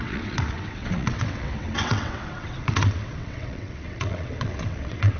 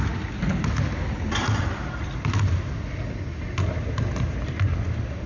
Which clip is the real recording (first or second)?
second